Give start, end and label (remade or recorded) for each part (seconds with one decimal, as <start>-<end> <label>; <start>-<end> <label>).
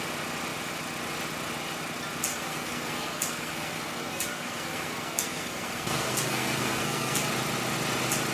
0.0-2.3 recorded; 2.3-7.3 remade; 7.3-8.3 recorded